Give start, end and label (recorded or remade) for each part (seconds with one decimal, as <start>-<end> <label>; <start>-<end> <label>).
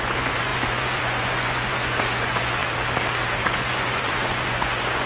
0.0-2.6 remade; 2.6-3.4 recorded; 3.4-5.1 remade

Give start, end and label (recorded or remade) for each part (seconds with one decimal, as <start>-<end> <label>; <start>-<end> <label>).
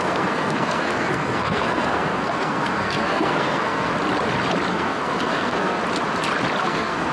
0.0-3.9 remade; 3.9-4.7 recorded; 4.7-5.8 remade; 5.8-6.6 recorded; 6.6-7.1 remade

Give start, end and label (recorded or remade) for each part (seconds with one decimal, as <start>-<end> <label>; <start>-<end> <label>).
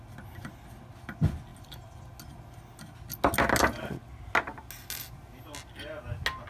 0.0-6.5 recorded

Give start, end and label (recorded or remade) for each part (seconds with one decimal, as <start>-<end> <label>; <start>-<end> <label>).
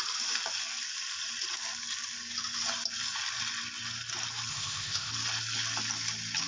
0.0-4.5 recorded; 4.5-5.1 remade; 5.1-6.5 recorded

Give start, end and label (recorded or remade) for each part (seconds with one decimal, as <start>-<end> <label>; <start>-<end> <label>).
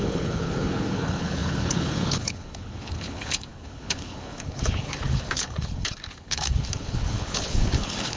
0.0-8.2 remade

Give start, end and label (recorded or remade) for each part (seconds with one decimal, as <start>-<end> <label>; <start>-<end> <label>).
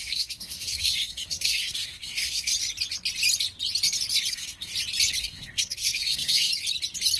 0.0-2.5 remade; 2.5-4.3 recorded; 4.3-4.7 remade; 4.7-5.2 recorded; 5.2-6.5 remade; 6.5-7.2 recorded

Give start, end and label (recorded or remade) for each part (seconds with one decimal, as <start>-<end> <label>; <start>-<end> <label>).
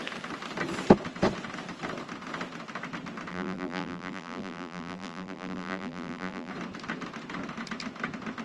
0.0-3.3 recorded; 3.3-6.5 remade; 6.5-8.4 recorded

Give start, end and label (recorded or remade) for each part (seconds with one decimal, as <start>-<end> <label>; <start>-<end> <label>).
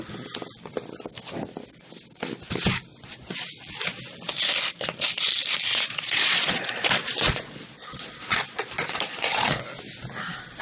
0.0-2.9 recorded; 2.9-3.8 remade; 3.8-5.7 recorded; 5.7-9.6 remade; 9.6-10.6 recorded